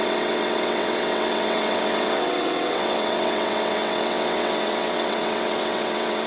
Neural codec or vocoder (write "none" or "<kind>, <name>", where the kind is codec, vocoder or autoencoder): vocoder, WaveNeXt